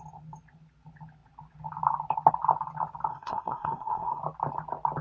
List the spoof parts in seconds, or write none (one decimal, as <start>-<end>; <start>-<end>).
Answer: 3.1-4.2